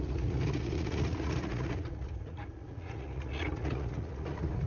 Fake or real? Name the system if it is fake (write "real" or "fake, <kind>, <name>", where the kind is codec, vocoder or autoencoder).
fake, vocoder, Vocos